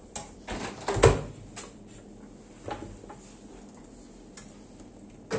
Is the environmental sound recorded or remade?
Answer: recorded